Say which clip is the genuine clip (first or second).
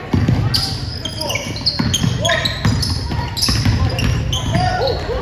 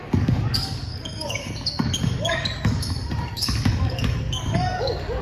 first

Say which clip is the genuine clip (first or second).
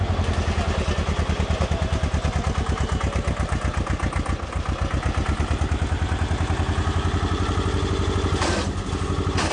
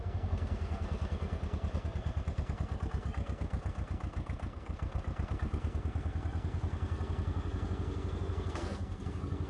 first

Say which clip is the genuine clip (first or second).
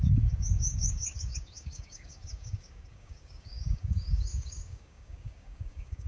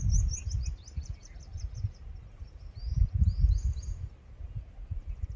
second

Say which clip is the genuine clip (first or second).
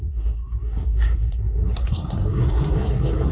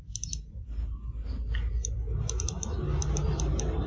second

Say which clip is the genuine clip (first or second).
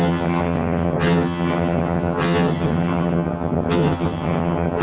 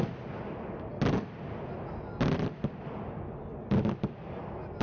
second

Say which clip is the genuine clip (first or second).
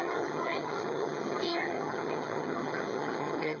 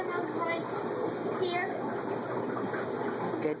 second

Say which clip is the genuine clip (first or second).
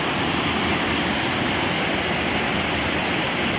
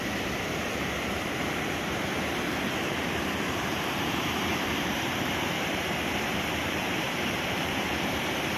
first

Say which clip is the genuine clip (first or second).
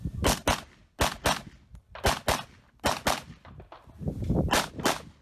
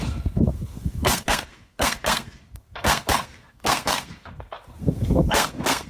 first